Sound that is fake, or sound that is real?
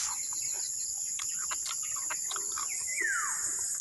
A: real